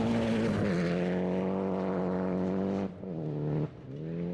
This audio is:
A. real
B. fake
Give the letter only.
A